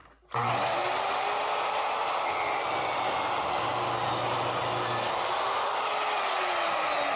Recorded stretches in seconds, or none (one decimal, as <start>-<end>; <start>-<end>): 0.0-7.2